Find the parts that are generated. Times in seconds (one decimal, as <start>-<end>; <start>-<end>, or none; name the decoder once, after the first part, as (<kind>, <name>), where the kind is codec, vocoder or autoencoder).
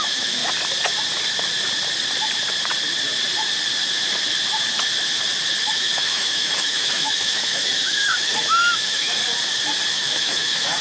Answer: 0.0-0.4 (autoencoder, DAC-VAE); 5.6-9.2; 9.9-10.8